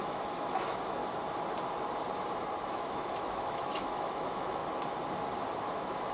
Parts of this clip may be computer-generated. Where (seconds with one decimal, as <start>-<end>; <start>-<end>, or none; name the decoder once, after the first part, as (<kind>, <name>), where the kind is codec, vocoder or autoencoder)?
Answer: 0.0-1.0 (autoencoder, DAC-VAE); 2.7-4.6; 5.6-6.1